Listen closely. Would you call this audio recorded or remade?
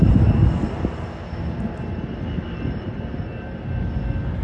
recorded